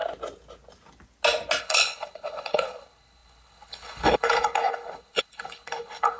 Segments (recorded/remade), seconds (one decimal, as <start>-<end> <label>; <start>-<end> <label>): 0.0-1.6 recorded; 1.6-6.2 remade